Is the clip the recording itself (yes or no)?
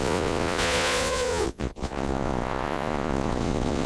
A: no